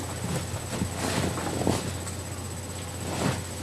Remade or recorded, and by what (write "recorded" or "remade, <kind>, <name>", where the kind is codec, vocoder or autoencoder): recorded